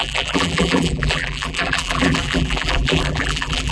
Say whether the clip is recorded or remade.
remade